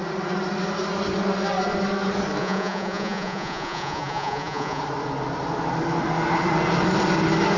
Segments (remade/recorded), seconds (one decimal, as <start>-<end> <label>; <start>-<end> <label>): 0.0-2.4 recorded; 2.4-4.8 remade; 4.8-7.6 recorded